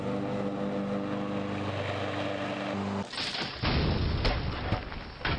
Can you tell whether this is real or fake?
real